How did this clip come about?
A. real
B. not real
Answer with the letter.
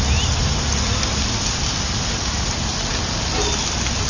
A